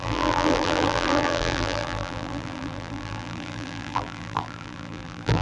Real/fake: fake